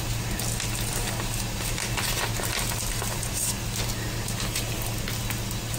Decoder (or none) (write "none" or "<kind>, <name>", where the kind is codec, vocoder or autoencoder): none